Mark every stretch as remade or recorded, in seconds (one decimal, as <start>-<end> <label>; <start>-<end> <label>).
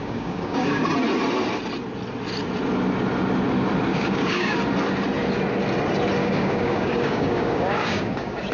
0.0-0.8 remade; 0.8-3.9 recorded; 3.9-4.6 remade; 4.6-6.2 recorded; 6.2-8.5 remade